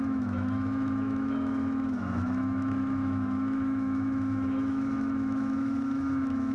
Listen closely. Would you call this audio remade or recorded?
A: remade